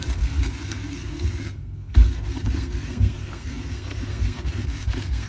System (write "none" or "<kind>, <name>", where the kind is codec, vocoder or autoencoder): codec, SNAC